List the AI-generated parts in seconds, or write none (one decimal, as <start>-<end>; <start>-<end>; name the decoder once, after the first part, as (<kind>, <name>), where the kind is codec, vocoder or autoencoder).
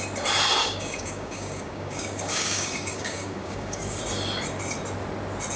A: 0.6-4.0 (codec, DAC)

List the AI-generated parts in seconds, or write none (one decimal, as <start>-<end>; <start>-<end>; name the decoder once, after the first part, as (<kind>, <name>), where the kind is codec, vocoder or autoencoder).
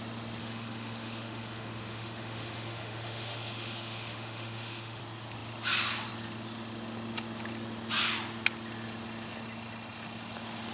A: 0.4-5.0 (autoencoder, DAC-VAE)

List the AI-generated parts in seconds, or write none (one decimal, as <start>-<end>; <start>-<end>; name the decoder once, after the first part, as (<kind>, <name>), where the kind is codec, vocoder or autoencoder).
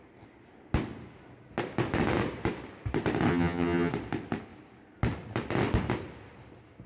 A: 3.3-3.9 (vocoder, HiFi-GAN)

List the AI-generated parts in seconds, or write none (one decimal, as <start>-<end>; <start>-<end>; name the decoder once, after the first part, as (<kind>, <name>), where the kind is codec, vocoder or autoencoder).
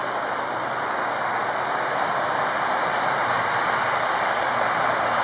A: none